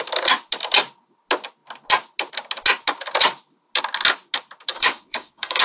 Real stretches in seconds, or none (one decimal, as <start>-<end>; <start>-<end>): 0.0-4.7